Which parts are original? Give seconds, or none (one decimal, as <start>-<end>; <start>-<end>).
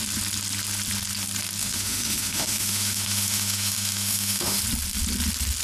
0.0-1.6; 4.6-5.6